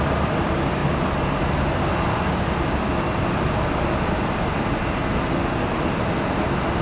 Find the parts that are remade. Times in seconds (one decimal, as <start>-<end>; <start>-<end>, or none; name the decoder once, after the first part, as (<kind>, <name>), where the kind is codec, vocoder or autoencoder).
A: none